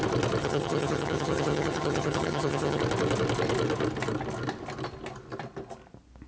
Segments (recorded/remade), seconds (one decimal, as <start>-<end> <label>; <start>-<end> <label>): 0.0-0.4 recorded; 0.4-2.8 remade; 2.8-6.3 recorded